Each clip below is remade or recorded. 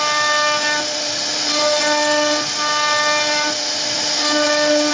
recorded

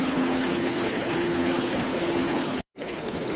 remade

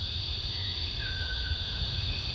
remade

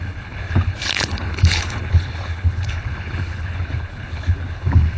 remade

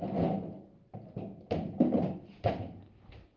recorded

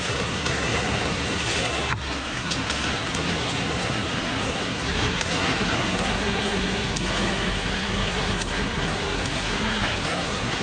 remade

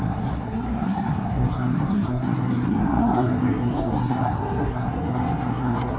remade